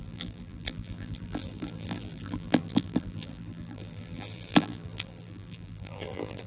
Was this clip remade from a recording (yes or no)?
yes